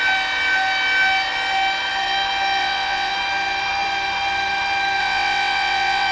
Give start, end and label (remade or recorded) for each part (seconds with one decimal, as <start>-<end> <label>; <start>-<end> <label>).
0.0-2.6 recorded; 2.6-3.1 remade; 3.1-5.0 recorded; 5.0-6.1 remade